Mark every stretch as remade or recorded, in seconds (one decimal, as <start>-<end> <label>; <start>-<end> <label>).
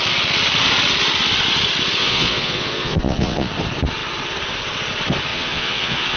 0.0-2.0 recorded; 2.0-3.5 remade; 3.5-5.3 recorded; 5.3-6.2 remade